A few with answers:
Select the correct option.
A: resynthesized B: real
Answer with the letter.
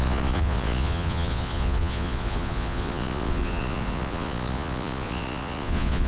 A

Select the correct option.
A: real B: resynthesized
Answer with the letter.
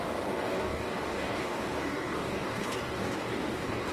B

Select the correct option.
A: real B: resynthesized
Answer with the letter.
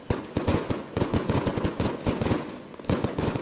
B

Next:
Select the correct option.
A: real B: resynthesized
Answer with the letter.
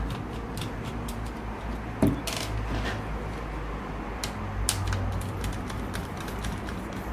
A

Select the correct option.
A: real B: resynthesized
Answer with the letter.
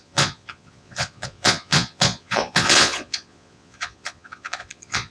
B